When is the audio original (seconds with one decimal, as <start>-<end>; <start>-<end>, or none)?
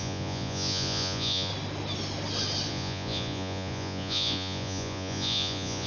1.5-2.7